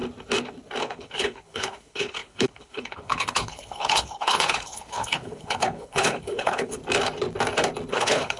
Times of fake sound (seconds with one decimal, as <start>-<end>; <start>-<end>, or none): 0.8-6.8; 7.9-8.4